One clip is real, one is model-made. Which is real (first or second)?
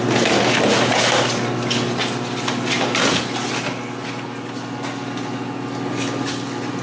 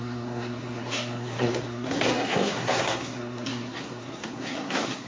first